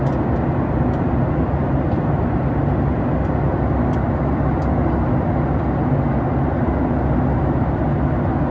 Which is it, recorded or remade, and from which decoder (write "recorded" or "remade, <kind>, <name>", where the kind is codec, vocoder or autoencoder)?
recorded